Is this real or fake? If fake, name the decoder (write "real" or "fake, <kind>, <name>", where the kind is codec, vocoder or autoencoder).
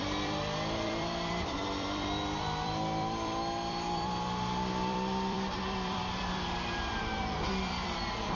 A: fake, vocoder, BigVGAN v2